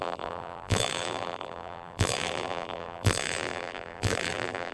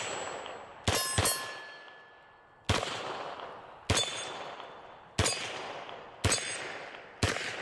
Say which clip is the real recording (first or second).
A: second